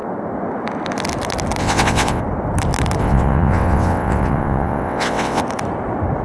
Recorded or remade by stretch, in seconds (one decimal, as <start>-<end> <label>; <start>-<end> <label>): 0.0-1.6 recorded; 1.6-2.2 remade; 2.2-3.0 recorded; 3.0-5.4 remade; 5.4-6.2 recorded